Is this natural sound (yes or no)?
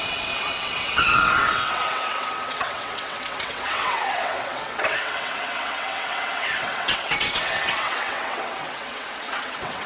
no